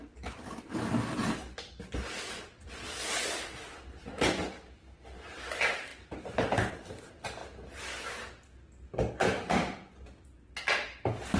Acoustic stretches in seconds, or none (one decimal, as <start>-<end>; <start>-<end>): 1.4-2.6; 5.9-6.7; 7.4-9.4